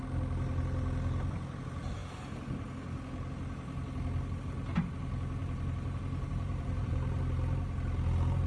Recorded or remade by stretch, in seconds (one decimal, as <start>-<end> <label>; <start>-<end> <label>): 0.0-5.4 recorded; 5.4-7.2 remade; 7.2-8.5 recorded